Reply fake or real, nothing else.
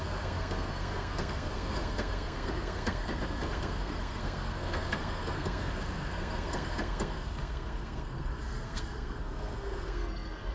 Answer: fake